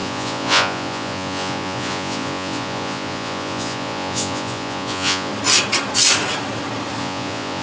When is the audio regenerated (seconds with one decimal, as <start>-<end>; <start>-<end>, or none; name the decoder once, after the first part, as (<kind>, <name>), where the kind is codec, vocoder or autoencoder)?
0.0-5.3 (vocoder, Vocos); 7.0-7.6